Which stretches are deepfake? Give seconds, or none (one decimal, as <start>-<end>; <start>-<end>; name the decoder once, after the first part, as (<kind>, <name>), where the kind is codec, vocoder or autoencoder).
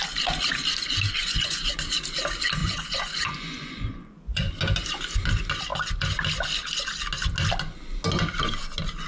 1.2-1.8 (vocoder, Vocos); 2.6-4.5